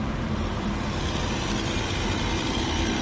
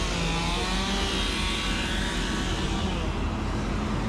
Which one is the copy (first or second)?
first